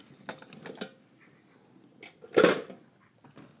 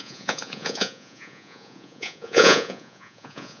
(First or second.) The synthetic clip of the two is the second